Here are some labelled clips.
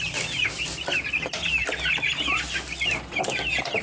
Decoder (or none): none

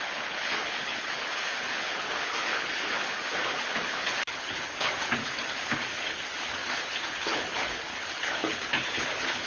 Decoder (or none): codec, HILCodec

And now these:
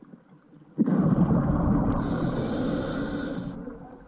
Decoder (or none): none